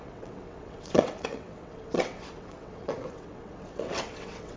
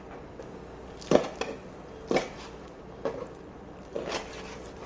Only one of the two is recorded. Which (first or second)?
second